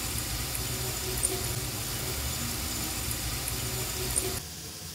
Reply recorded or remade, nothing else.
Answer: recorded